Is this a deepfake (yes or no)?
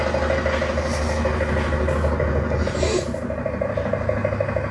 no